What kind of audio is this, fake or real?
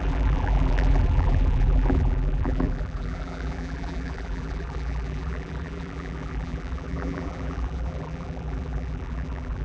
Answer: fake